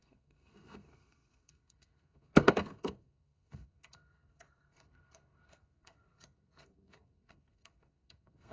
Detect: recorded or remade remade